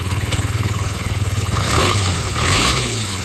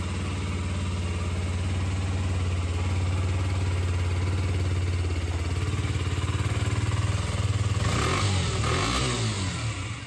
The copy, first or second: first